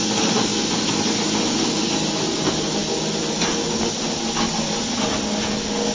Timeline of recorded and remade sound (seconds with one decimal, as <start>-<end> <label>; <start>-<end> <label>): 0.0-5.9 recorded